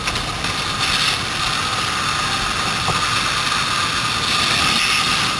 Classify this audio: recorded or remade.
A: recorded